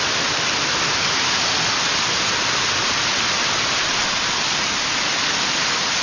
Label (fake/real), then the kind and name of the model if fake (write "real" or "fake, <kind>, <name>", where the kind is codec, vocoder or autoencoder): real